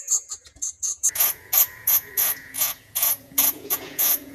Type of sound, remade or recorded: remade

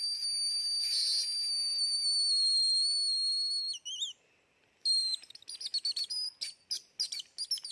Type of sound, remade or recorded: recorded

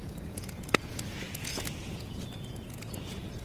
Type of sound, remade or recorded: remade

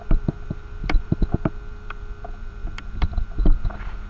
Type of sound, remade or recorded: remade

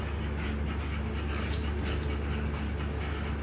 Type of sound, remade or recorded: recorded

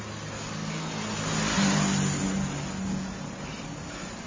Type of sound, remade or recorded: recorded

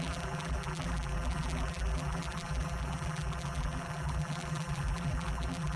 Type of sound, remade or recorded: remade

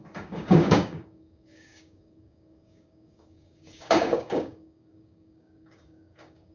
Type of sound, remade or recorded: remade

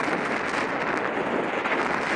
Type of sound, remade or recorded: recorded